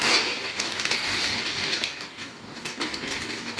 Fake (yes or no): yes